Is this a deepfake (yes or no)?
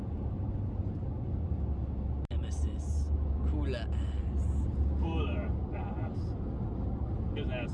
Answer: no